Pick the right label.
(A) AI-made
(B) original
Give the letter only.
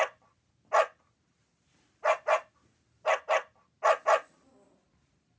B